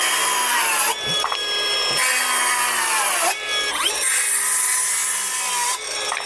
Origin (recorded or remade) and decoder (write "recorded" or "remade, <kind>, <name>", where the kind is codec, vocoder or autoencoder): recorded